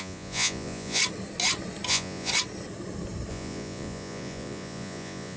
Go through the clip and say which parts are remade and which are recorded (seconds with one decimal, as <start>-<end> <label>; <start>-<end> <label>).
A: 0.0-1.0 remade; 1.0-1.9 recorded; 1.9-2.3 remade; 2.3-3.3 recorded; 3.3-5.4 remade